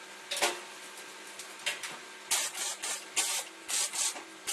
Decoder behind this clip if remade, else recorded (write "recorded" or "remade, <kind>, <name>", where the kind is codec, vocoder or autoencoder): recorded